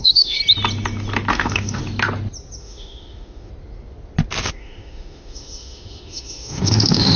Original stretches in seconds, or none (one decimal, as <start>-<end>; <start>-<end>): 0.4-1.3; 1.8-2.6; 3.5-4.5